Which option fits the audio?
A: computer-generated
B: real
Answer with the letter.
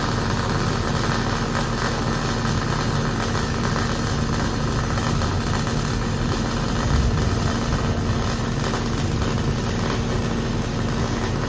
B